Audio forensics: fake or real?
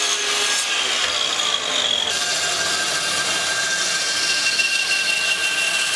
real